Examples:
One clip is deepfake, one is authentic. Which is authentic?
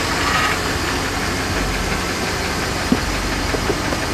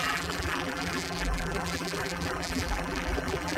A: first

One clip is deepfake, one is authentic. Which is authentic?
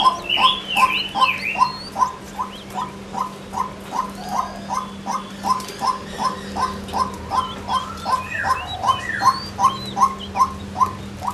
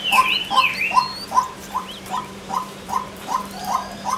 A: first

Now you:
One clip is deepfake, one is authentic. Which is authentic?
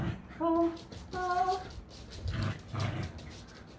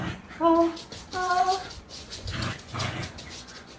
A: first